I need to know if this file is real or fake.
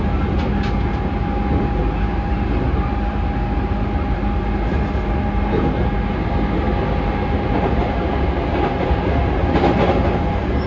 real